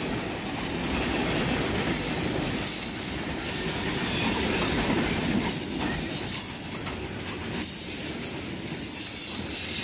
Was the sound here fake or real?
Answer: real